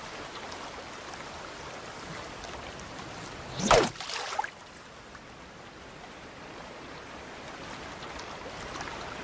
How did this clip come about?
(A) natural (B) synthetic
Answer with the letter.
A